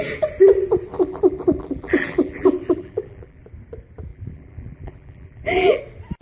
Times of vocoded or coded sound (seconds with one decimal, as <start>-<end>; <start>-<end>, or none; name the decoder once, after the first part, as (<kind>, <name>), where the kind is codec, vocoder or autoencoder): 0.9-3.4 (vocoder, BigVGAN v2); 4.1-5.8